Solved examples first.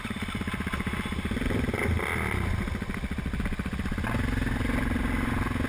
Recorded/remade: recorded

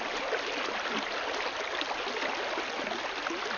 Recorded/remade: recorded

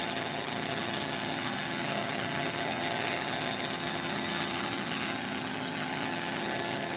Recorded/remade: remade